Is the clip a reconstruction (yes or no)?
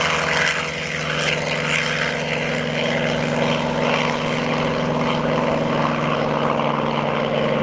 no